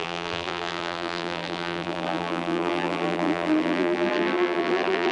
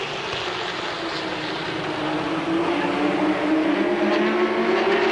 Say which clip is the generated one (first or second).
first